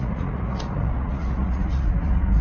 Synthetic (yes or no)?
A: yes